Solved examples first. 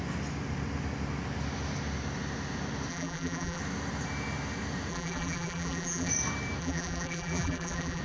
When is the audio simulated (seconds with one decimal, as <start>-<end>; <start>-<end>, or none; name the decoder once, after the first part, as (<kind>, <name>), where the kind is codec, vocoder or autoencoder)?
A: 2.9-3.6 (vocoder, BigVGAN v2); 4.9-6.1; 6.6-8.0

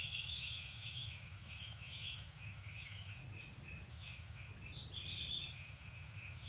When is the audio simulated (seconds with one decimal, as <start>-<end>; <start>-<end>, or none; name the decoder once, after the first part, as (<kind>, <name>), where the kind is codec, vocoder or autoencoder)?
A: 0.0-3.2 (autoencoder, DAC-VAE); 3.9-4.5; 5.5-6.5

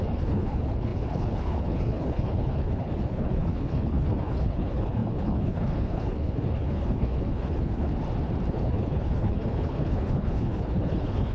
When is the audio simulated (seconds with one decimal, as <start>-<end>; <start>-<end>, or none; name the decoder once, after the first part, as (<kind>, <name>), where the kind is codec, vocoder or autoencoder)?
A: 0.0-7.9 (codec, HILCodec); 8.5-11.3

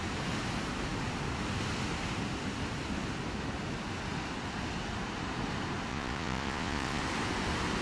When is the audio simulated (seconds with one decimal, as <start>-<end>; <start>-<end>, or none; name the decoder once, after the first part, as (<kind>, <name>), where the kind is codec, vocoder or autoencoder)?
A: 5.9-7.0 (vocoder, Vocos)

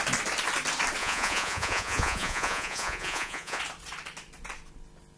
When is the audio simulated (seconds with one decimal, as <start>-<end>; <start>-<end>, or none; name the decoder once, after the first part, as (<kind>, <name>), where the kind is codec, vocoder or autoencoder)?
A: 1.0-3.6 (vocoder, Vocos)

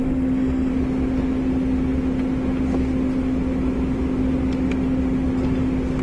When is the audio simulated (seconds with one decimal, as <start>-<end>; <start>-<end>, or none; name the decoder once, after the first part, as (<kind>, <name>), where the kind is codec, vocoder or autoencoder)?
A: 0.0-0.7 (codec, SNAC)

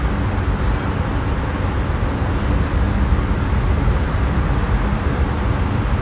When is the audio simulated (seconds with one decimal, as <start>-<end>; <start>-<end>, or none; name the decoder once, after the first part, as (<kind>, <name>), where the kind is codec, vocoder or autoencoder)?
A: none